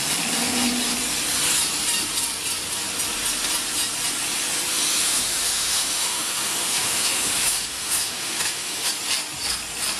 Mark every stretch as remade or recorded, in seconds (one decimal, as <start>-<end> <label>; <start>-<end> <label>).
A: 0.0-5.0 recorded; 5.0-8.9 remade; 8.9-10.0 recorded